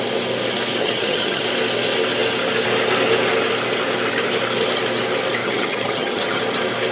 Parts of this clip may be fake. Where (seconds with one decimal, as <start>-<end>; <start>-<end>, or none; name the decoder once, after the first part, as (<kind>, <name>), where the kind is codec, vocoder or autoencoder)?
0.8-1.4 (vocoder, HiFi-GAN); 5.4-6.4